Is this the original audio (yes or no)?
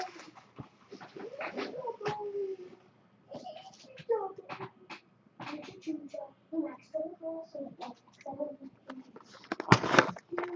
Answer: yes